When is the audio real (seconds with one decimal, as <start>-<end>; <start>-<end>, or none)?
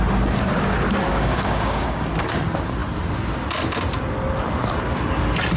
0.0-1.1; 2.1-5.6